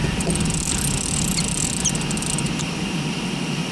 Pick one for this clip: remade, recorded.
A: recorded